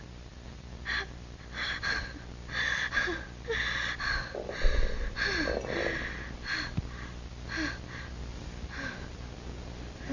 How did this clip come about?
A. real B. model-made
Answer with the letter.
A